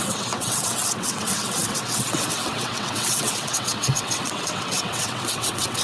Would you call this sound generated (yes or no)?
yes